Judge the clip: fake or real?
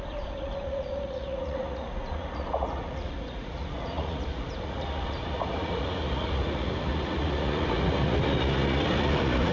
fake